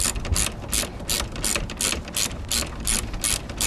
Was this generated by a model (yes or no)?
no